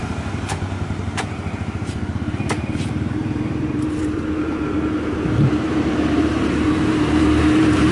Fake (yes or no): yes